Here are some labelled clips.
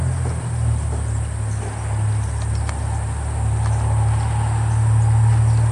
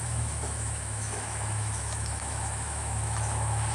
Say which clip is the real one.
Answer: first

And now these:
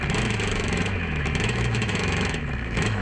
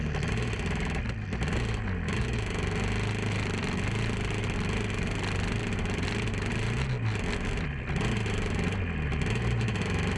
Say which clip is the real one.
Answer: second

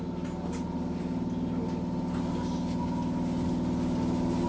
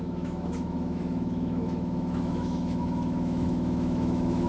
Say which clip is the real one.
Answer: first